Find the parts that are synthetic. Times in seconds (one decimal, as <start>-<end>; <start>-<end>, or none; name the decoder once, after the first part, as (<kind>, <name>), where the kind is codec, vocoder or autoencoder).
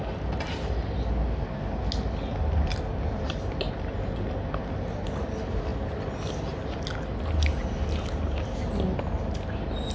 none